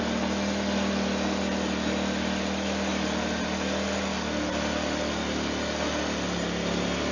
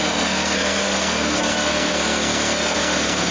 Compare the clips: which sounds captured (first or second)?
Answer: first